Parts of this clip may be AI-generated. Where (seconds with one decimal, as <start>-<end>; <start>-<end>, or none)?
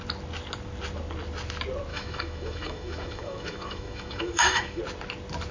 1.9-4.8